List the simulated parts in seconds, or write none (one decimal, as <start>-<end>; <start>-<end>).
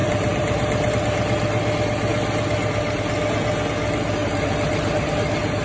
0.0-0.9; 4.2-5.1